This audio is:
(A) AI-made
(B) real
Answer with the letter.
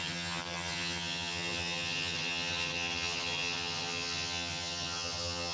A